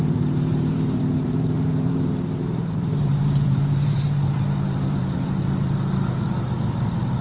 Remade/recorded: remade